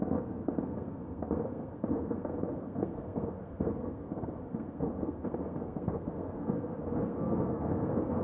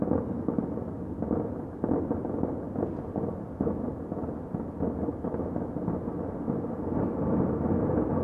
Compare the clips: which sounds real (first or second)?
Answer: second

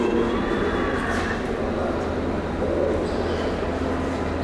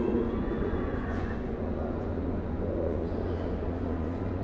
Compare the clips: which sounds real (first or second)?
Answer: first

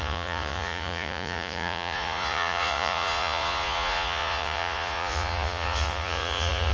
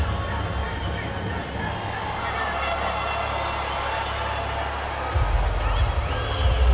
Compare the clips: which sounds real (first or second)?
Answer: second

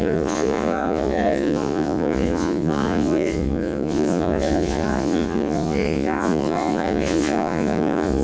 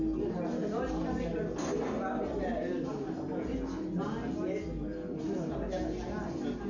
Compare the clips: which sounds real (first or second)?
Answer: second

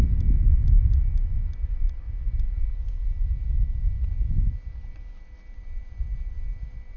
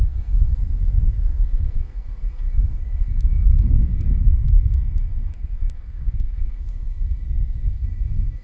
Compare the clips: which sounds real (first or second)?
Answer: first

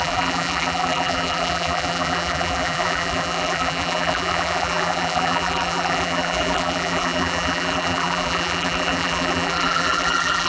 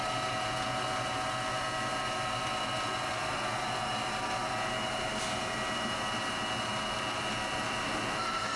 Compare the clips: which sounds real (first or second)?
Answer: second